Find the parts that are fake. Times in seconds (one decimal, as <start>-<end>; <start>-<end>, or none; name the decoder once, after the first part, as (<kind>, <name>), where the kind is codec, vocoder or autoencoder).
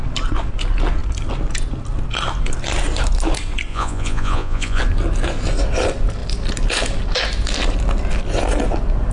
3.7-4.8 (vocoder, Vocos)